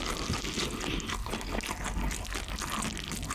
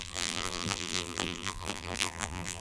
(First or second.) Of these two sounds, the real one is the first